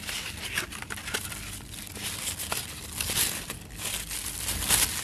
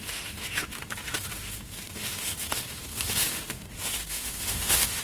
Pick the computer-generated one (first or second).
second